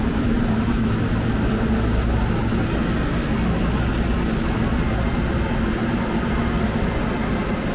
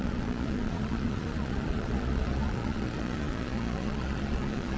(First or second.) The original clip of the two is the first